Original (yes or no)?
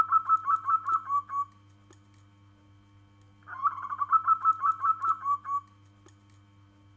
yes